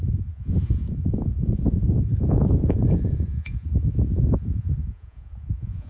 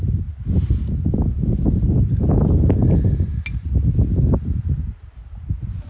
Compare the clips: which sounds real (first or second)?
second